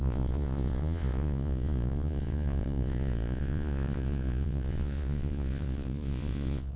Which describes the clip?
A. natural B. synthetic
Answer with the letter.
B